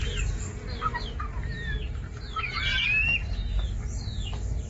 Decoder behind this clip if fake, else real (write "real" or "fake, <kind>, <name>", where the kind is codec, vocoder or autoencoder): real